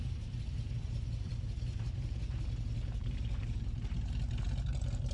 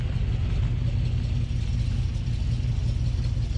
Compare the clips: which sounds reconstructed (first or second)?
first